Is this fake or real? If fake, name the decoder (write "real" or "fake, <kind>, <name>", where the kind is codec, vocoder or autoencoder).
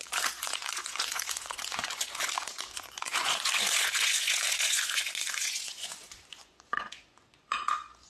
fake, vocoder, Vocos